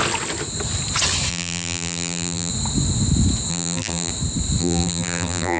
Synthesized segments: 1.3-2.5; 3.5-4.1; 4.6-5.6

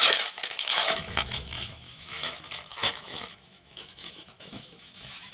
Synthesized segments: 0.0-5.3

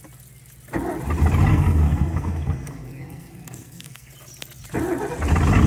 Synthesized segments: 1.5-4.1

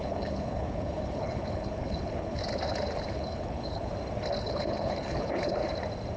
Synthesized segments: 0.0-2.4; 3.1-3.9; 4.4-5.6

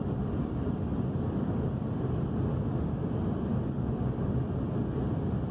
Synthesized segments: none

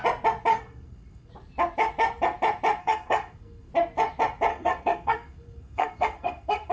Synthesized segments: 0.5-1.3; 2.8-3.7; 4.5-6.7

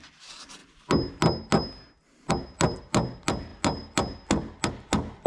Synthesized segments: none

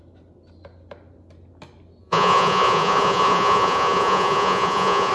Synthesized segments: 2.0-5.1